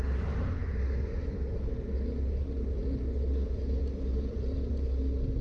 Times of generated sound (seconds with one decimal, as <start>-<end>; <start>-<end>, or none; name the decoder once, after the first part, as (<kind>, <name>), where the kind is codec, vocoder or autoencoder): none

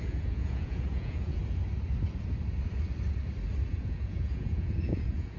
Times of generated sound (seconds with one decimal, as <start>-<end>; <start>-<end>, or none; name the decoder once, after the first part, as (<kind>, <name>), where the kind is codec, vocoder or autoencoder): 0.0-1.4 (vocoder, Vocos); 3.8-5.4

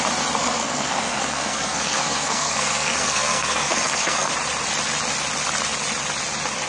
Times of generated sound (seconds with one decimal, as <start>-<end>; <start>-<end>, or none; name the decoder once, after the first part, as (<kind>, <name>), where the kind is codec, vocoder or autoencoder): 0.4-4.3 (codec, SNAC)